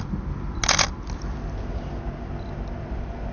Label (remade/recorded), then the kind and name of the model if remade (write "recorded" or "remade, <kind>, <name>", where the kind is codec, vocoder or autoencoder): recorded